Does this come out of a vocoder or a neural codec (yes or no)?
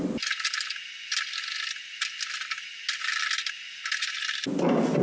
no